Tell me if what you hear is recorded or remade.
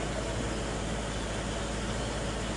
recorded